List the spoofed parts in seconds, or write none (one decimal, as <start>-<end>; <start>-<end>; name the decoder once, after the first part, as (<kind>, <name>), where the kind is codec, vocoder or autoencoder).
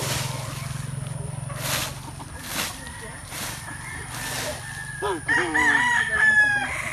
3.1-4.0 (vocoder, BigVGAN v2)